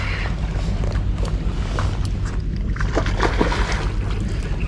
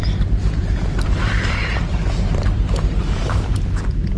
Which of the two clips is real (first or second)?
first